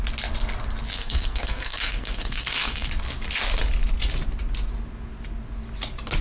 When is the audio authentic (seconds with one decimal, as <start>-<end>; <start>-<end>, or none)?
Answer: 0.0-0.9; 2.9-6.2